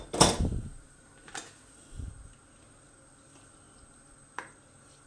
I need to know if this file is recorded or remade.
recorded